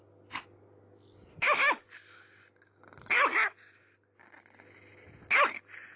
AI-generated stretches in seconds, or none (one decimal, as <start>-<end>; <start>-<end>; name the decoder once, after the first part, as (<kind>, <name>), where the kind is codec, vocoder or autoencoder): 1.3-1.8 (autoencoder, DAC-VAE)